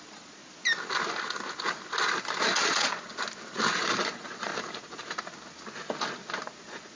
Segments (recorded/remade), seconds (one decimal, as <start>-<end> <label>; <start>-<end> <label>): 0.0-0.4 remade; 0.4-2.4 recorded; 2.4-3.1 remade; 3.1-3.8 recorded; 3.8-4.5 remade; 4.5-6.6 recorded; 6.6-7.0 remade